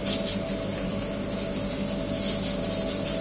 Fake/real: real